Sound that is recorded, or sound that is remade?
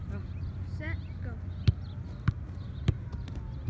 recorded